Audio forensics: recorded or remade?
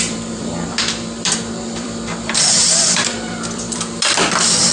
remade